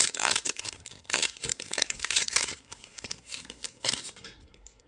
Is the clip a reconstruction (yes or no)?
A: yes